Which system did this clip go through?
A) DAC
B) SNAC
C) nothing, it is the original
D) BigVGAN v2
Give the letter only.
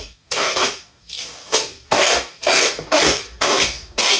A